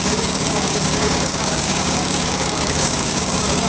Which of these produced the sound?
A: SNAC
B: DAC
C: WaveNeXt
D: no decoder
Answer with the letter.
B